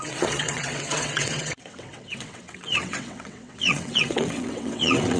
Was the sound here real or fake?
fake